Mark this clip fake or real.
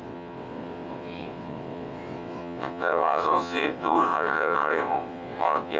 fake